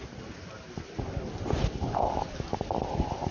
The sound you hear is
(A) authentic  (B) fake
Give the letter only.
A